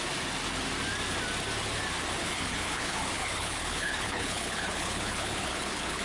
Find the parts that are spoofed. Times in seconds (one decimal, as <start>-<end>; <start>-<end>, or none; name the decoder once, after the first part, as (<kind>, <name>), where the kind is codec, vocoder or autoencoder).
2.2-6.0 (codec, HILCodec)